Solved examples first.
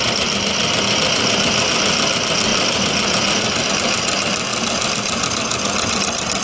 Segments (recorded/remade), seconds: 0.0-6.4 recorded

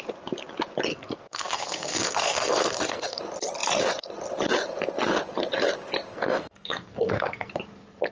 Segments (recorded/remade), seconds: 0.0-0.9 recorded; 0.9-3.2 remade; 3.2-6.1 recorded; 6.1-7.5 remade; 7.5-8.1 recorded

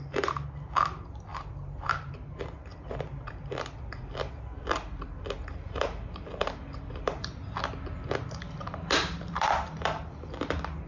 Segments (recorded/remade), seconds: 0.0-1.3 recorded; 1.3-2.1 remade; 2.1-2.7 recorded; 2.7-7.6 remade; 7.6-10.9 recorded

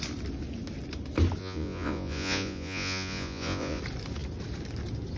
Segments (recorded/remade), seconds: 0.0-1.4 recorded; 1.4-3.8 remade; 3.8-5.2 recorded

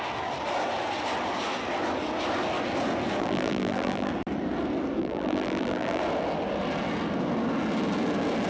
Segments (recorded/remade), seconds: 0.0-3.2 recorded; 3.2-4.1 remade; 4.1-5.0 recorded; 5.0-6.0 remade; 6.0-8.5 recorded

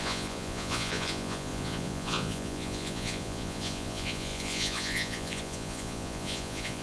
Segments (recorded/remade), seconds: 0.0-6.8 remade

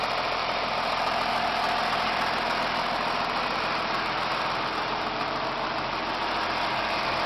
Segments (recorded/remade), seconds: 0.0-7.3 recorded

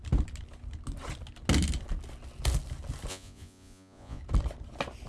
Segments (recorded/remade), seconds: 0.0-3.1 recorded; 3.1-4.2 remade; 4.2-5.1 recorded